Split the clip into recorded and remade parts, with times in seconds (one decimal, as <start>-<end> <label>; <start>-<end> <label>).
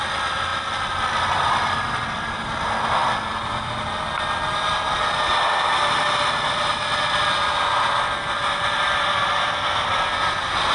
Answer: 0.0-0.5 recorded; 0.5-2.2 remade; 2.2-10.7 recorded